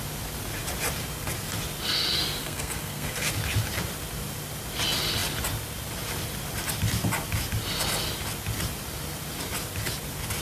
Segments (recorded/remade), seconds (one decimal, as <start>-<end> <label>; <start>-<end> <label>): 0.0-2.4 recorded; 2.4-3.3 remade; 3.3-10.4 recorded